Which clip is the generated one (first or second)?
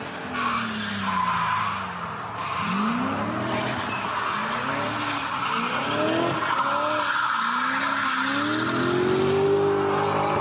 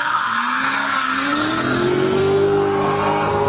second